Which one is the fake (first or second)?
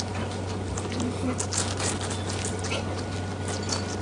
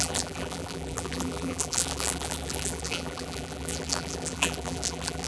second